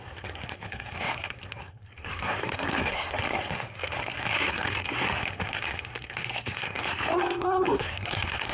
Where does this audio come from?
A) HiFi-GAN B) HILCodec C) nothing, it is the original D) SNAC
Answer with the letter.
D